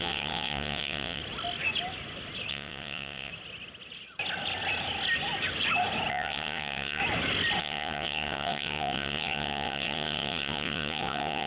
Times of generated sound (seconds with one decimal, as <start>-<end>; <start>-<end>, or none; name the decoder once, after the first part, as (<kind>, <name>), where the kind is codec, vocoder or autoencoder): 0.0-1.2 (vocoder, WaveNeXt); 2.5-3.3; 6.1-7.0; 7.6-11.5